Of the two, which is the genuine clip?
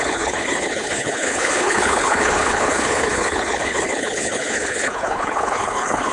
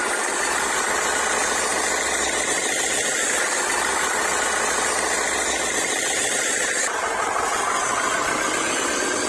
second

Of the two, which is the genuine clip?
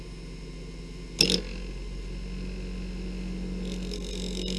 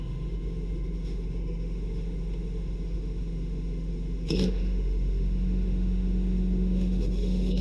first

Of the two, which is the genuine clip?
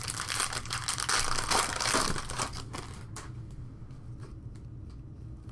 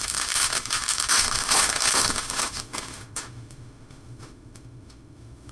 first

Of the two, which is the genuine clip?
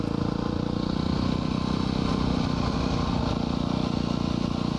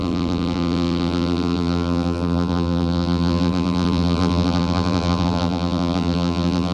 first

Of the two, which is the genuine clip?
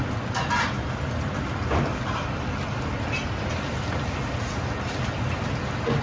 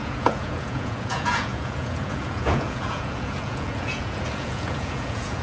first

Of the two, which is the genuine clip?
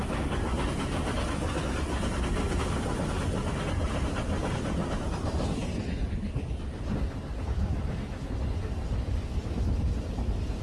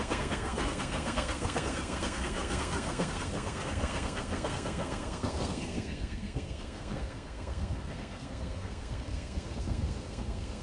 first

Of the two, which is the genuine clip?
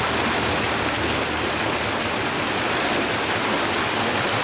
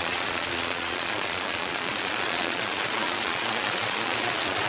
first